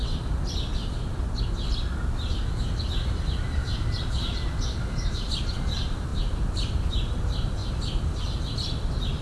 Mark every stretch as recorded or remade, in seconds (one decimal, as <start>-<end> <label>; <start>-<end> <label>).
0.0-3.5 recorded; 3.5-7.6 remade; 7.6-9.2 recorded